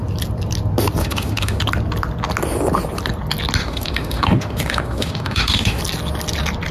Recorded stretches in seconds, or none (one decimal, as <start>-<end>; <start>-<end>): 0.0-1.0; 1.6-3.6; 5.8-6.7